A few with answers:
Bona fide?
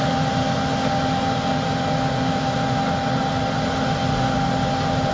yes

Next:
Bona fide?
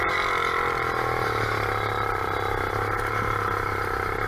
yes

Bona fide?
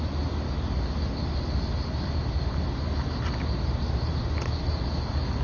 yes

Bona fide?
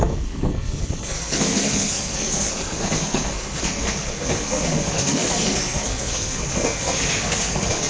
no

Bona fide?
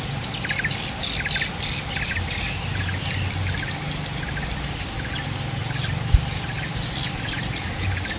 yes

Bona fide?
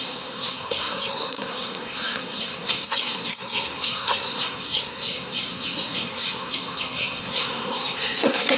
no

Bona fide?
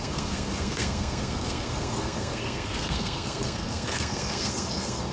no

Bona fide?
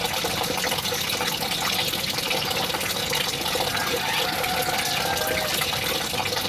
yes